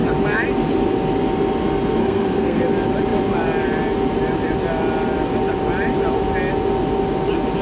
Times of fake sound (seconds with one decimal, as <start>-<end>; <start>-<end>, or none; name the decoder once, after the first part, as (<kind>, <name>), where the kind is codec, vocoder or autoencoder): 2.0-2.6 (codec, SNAC)